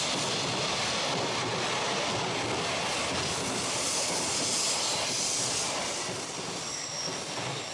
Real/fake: real